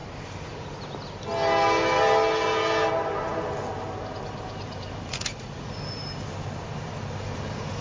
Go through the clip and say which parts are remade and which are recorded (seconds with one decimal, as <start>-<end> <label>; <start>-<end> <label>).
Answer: 0.0-5.1 recorded; 5.1-5.7 remade; 5.7-7.8 recorded